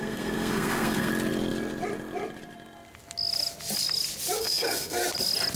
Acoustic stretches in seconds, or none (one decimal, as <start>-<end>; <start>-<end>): 1.1-4.4; 5.0-5.6